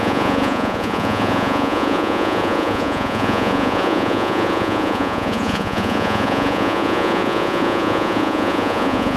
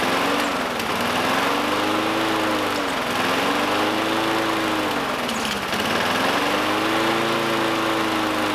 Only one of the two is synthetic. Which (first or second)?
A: first